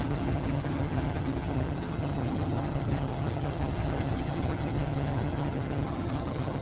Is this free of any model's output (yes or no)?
no